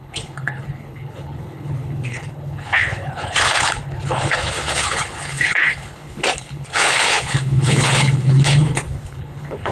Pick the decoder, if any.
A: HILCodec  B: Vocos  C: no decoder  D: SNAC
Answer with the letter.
A